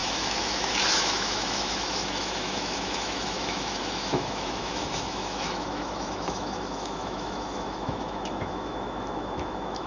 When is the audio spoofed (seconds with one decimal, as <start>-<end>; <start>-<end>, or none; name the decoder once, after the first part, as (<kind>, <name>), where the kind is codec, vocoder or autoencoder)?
0.0-9.9 (autoencoder, DAC-VAE)